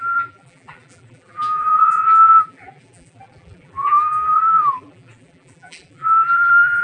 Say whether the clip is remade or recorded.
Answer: remade